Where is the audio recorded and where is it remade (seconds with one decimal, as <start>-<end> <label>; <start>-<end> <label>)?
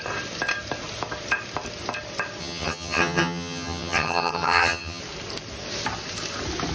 0.0-2.4 recorded; 2.4-5.0 remade; 5.0-6.7 recorded